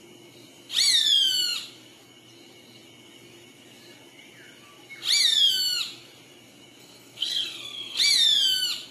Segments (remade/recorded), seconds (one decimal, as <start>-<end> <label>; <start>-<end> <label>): 0.0-6.8 recorded; 6.8-8.0 remade; 8.0-8.9 recorded